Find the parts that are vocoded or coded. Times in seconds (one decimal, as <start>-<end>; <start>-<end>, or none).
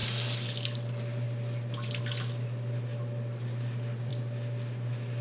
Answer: none